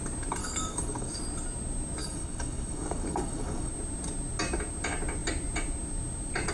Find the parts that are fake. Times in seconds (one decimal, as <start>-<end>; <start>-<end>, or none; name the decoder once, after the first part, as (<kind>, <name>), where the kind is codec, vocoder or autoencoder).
0.4-1.2 (codec, DAC); 2.0-3.7